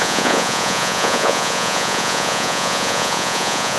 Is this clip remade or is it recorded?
remade